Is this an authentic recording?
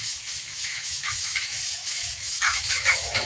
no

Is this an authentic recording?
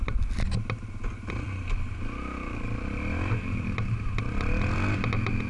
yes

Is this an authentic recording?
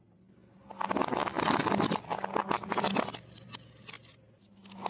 yes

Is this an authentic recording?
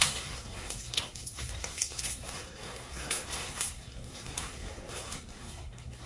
no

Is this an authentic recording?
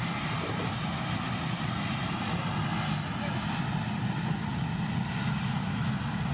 yes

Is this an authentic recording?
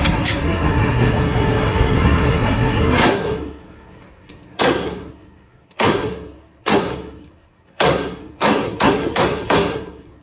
no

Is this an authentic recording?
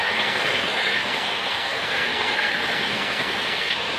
no